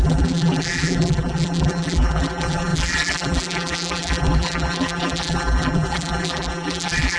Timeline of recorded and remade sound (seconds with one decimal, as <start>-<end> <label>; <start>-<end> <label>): 0.0-7.2 remade